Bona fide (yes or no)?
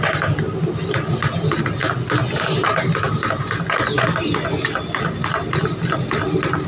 yes